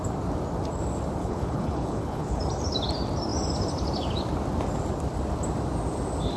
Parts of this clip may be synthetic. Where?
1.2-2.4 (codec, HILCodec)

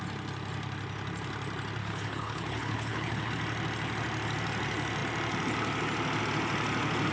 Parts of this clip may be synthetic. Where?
1.8-3.3 (codec, HILCodec)

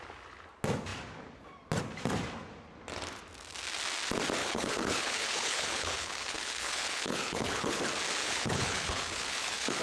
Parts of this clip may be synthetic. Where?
4.4-7.8 (codec, HILCodec); 8.2-9.8

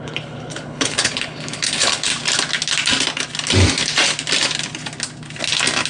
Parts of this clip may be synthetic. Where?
0.0-2.1 (codec, HILCodec)